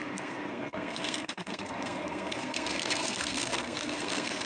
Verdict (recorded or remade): remade